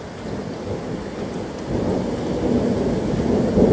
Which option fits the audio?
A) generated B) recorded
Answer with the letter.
B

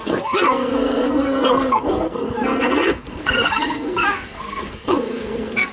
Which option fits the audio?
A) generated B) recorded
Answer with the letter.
A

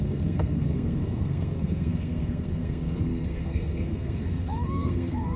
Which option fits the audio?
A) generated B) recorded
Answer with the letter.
A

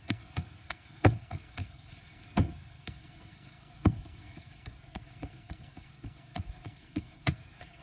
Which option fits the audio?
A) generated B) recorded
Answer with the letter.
A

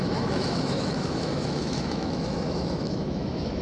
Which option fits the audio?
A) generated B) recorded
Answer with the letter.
A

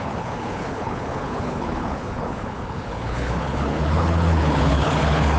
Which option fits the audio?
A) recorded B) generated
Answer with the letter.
B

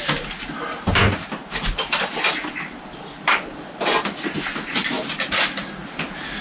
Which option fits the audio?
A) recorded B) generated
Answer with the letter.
A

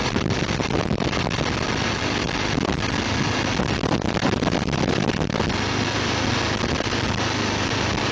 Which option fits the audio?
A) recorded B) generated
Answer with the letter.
A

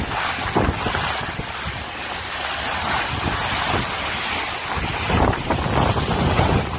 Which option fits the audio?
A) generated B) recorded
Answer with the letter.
B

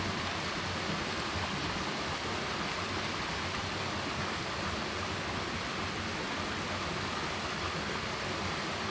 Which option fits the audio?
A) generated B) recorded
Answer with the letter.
B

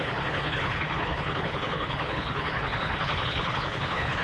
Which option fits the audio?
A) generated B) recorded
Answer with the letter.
A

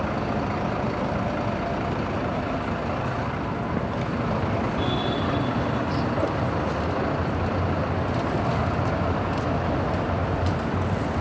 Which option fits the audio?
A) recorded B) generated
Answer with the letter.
A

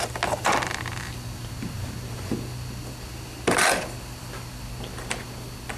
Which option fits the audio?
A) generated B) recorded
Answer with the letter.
B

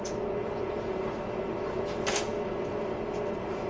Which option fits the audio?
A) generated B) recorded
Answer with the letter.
B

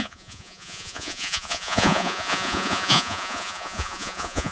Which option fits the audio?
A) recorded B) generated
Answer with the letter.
B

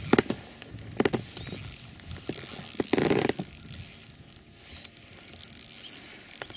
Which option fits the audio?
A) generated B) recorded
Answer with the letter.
B